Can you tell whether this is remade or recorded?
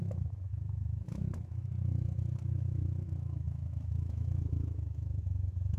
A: remade